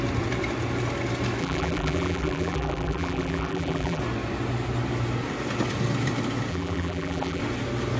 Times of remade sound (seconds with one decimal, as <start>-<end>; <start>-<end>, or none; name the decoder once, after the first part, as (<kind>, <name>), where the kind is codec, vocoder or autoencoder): 1.4-4.0 (vocoder, BigVGAN v2); 6.5-7.4